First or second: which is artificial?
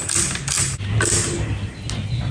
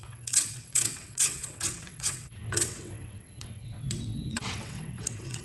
second